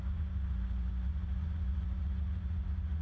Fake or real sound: fake